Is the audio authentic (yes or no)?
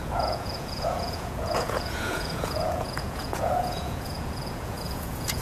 no